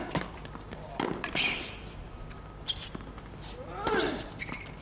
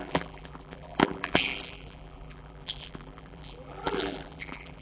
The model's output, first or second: second